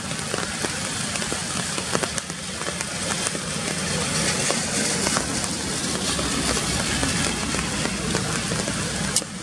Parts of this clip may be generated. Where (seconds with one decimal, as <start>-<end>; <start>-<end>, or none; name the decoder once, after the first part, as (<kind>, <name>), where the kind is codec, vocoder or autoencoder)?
none